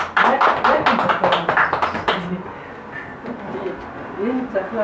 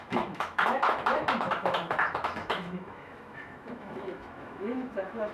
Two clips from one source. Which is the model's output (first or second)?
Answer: second